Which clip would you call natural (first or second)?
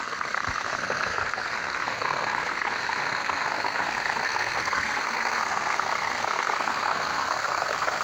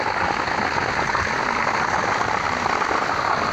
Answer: second